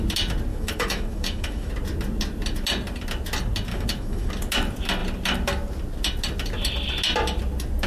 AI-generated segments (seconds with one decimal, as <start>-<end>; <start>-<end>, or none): 0.5-1.7; 3.7-4.3